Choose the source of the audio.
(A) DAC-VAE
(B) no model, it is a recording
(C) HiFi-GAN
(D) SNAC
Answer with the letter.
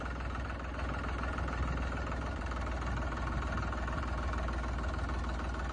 B